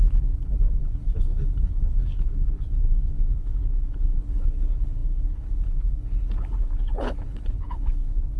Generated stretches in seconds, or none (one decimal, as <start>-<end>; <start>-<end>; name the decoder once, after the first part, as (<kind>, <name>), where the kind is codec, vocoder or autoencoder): 0.0-8.4 (codec, HILCodec)